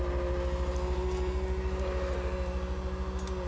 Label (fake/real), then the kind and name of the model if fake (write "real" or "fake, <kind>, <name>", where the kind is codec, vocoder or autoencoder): real